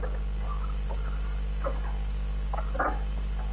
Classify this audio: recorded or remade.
recorded